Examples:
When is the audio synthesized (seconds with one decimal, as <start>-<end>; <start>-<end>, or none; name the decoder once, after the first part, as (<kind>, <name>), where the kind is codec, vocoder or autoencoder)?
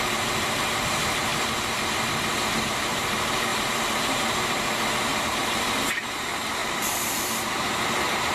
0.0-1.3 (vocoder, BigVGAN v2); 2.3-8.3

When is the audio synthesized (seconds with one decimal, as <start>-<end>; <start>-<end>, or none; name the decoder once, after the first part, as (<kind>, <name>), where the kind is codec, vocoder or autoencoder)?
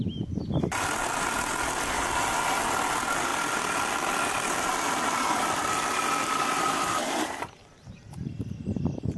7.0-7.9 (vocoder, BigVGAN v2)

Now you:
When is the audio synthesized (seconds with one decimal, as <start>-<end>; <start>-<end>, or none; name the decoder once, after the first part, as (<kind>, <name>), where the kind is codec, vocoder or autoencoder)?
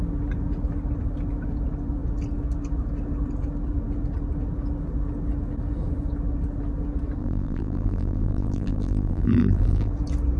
7.2-9.9 (vocoder, BigVGAN v2)